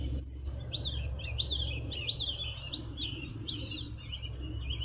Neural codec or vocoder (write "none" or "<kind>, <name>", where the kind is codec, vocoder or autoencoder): none